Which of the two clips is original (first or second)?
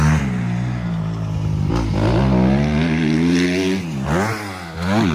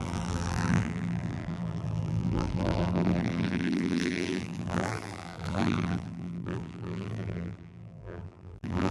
first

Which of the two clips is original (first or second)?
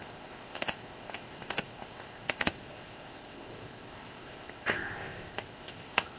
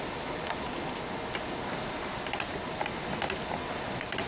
second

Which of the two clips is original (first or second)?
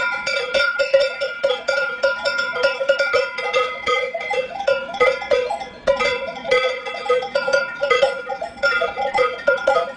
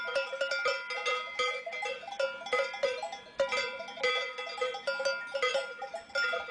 second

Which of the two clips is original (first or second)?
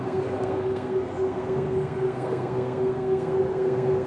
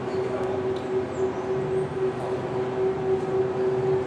second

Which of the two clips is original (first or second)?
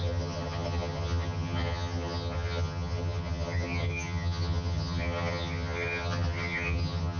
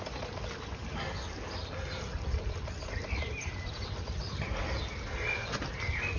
second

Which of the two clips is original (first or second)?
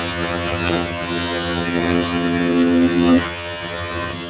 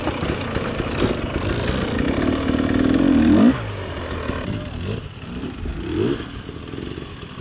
second